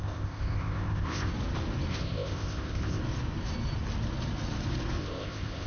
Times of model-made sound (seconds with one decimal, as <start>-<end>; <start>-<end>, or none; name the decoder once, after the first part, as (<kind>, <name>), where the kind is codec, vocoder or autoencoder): 0.0-1.3 (codec, ZipCodec); 1.9-3.0; 5.0-5.7